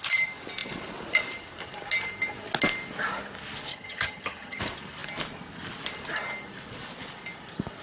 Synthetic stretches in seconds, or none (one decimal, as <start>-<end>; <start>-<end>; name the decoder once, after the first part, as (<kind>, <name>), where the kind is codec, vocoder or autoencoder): 3.7-4.6 (vocoder, HiFi-GAN)

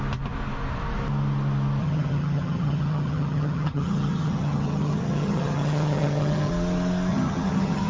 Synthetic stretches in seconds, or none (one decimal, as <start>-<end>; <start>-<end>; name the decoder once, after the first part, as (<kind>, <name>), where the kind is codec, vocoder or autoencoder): 1.8-6.5 (vocoder, HiFi-GAN); 7.1-7.9

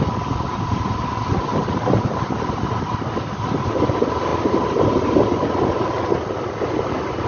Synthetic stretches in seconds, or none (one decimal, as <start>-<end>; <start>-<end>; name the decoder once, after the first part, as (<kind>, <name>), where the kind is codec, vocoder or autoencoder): none